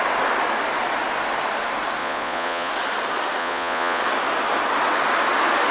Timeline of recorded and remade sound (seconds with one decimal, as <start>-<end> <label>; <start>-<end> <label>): 0.0-2.0 recorded; 2.0-2.7 remade; 2.7-3.4 recorded; 3.4-4.0 remade; 4.0-5.7 recorded